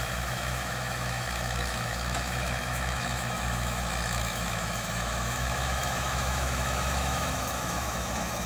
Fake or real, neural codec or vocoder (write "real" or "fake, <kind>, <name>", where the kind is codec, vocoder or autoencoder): fake, autoencoder, DAC-VAE